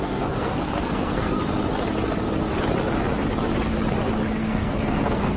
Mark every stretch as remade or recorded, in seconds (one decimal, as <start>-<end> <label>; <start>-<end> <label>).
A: 0.0-1.4 remade; 1.4-4.4 recorded; 4.4-5.4 remade

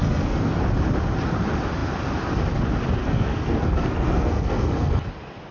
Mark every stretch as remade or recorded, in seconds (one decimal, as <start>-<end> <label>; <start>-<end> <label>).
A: 0.0-0.6 remade; 0.6-3.0 recorded; 3.0-5.1 remade; 5.1-5.5 recorded